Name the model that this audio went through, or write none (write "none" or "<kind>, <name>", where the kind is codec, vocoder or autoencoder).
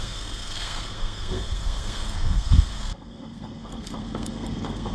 codec, SNAC